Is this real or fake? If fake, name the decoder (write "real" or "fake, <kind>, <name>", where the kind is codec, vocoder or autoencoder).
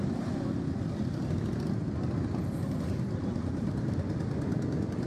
real